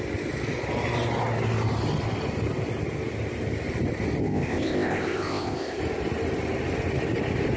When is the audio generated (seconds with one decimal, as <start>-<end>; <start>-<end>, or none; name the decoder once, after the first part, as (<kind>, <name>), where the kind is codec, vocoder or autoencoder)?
4.2-5.8 (codec, ZipCodec)